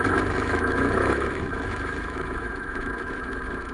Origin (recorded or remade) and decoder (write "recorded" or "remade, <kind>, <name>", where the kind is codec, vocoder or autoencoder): remade, autoencoder, DAC-VAE